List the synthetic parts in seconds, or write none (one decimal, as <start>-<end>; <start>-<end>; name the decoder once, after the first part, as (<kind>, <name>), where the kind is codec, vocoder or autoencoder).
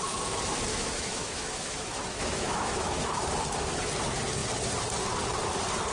0.7-3.3 (autoencoder, DAC-VAE)